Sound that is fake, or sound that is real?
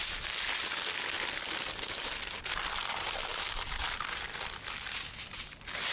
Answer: real